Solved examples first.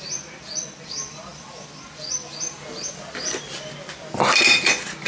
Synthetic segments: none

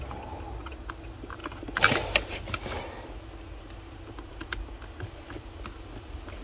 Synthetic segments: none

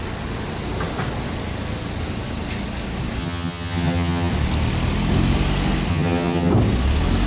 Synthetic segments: 3.2-4.3 (vocoder, HiFi-GAN); 5.9-6.5

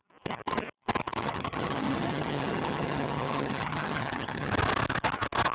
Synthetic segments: 1.2-4.5 (vocoder, HiFi-GAN)

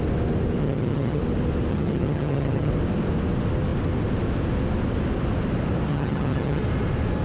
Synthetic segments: 0.6-1.2 (vocoder, HiFi-GAN); 1.7-2.7; 5.9-6.6

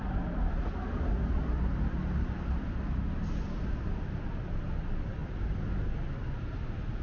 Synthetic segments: none